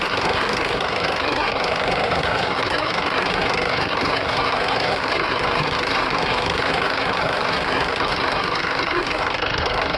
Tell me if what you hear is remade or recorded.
remade